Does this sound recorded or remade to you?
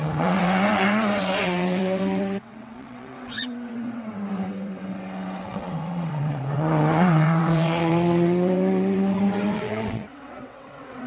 remade